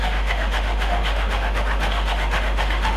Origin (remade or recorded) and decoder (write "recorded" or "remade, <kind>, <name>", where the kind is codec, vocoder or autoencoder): remade, autoencoder, DAC-VAE